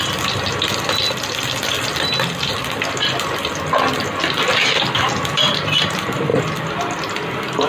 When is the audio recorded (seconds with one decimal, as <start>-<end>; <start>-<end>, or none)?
0.0-7.7